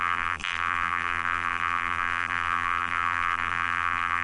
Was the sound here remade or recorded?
remade